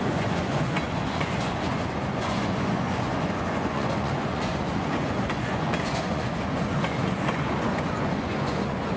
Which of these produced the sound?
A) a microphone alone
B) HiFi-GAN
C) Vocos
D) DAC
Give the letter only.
C